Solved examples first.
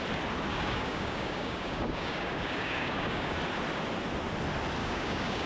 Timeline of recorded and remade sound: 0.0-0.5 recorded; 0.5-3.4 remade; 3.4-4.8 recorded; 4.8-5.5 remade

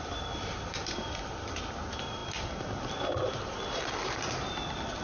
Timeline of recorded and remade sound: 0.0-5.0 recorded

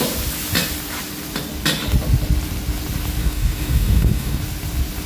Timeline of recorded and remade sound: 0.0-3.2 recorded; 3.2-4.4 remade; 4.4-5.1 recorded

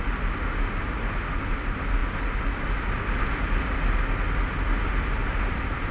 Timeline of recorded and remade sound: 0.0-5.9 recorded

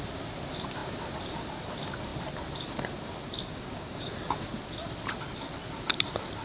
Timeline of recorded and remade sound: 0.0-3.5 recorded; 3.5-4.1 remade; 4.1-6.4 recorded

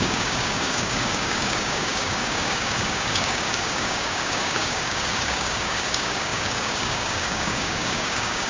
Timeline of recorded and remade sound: 0.0-8.5 remade